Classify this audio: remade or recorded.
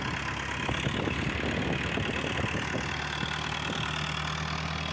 recorded